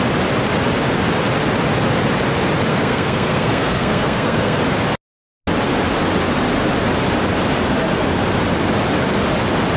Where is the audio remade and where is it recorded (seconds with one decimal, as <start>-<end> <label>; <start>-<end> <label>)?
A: 0.0-2.7 recorded; 2.7-4.6 remade; 4.6-9.8 recorded